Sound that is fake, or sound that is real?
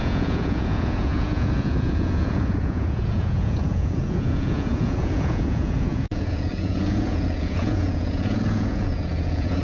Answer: fake